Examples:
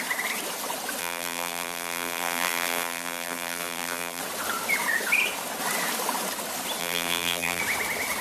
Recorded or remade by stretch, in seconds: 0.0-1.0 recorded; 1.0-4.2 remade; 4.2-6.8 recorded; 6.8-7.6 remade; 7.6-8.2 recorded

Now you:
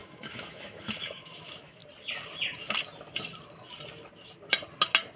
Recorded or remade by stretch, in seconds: 0.0-1.8 remade; 1.8-5.2 recorded

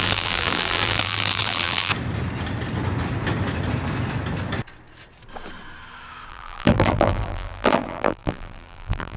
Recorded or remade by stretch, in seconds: 0.0-1.9 remade; 1.9-6.3 recorded; 6.3-9.2 remade

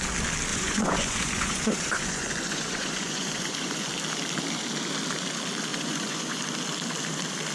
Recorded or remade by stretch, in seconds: 0.0-0.5 recorded; 0.5-3.9 remade; 3.9-5.7 recorded; 5.7-6.4 remade; 6.4-7.5 recorded

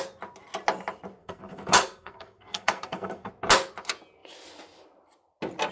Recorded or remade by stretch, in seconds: 0.0-1.2 recorded; 1.2-3.3 remade; 3.3-5.7 recorded